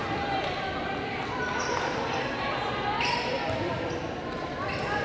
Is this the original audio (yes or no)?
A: no